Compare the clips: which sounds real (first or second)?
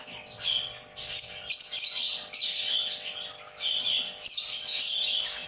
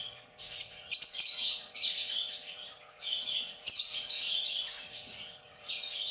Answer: first